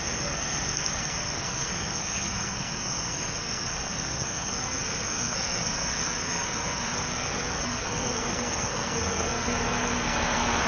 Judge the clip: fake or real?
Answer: fake